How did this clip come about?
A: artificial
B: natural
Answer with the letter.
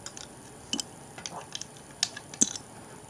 B